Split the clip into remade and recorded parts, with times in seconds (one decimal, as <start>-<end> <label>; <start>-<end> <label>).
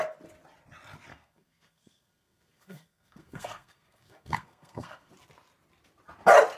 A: 0.0-1.1 recorded; 1.1-5.1 remade; 5.1-6.6 recorded